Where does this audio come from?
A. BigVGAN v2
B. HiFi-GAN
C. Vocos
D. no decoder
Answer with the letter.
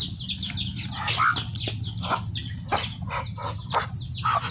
D